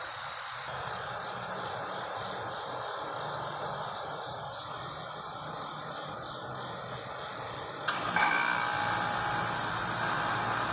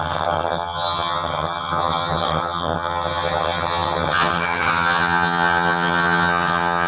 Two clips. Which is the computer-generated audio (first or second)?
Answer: second